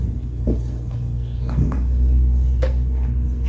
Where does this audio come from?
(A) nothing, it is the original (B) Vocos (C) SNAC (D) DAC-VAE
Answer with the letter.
C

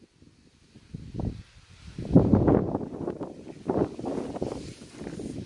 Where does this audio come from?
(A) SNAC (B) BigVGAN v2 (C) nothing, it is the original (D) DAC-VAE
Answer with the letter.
C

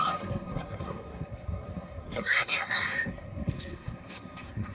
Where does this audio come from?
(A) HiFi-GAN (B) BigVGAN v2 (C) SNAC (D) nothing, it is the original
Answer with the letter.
C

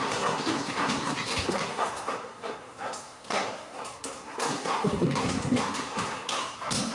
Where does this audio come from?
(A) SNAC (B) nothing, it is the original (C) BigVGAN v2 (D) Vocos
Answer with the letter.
A